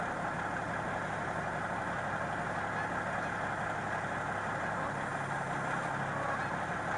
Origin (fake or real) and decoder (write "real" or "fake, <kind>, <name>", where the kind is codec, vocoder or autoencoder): real